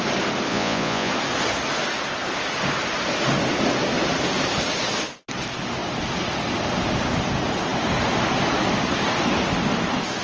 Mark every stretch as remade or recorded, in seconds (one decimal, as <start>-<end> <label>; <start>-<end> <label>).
0.0-0.5 recorded; 0.5-1.1 remade; 1.1-10.2 recorded